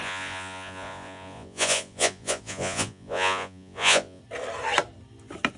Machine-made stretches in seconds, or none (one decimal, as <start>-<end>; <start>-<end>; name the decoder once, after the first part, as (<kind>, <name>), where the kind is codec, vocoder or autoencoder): 0.0-4.2 (vocoder, Vocos)